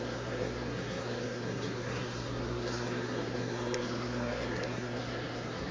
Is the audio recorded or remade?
remade